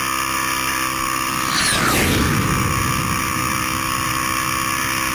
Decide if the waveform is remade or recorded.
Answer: recorded